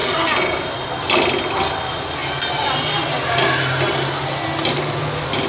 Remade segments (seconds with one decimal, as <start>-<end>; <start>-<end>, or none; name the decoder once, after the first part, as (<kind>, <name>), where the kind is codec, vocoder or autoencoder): none